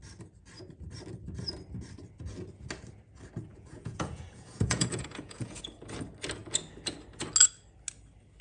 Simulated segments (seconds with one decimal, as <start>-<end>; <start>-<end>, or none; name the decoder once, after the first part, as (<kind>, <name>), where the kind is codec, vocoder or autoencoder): 3.5-5.6 (vocoder, Vocos)